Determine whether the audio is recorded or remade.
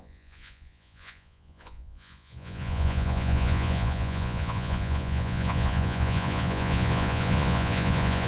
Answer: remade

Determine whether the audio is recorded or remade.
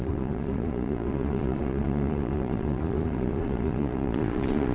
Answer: remade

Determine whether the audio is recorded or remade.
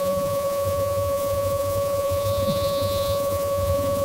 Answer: remade